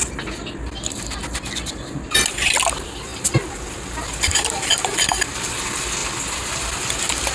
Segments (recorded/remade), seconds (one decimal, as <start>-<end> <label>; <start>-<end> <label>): 0.0-1.2 remade; 1.2-2.3 recorded; 2.3-7.3 remade